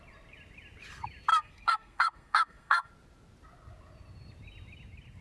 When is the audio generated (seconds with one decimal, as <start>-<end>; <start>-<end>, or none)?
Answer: 1.3-2.9